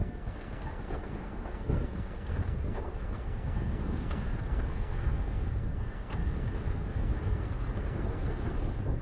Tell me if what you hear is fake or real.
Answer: fake